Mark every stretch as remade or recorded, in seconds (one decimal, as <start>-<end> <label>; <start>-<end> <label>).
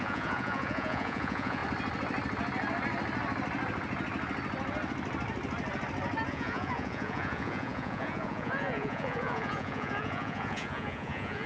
0.0-1.6 remade; 1.6-6.3 recorded; 6.3-11.5 remade